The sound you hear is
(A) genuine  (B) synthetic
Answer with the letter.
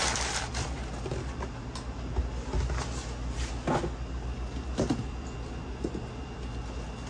A